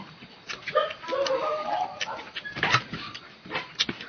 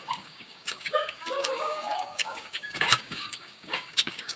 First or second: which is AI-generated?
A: second